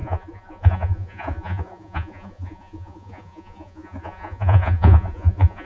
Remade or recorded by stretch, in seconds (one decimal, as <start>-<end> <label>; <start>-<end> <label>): 0.0-5.6 remade